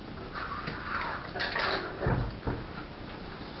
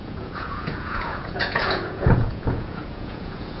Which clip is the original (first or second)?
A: first